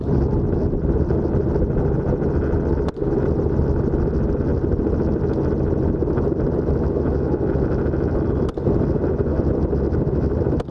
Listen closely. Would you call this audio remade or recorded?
recorded